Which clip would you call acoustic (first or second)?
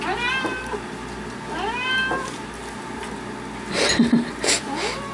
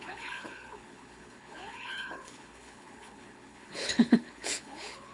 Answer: first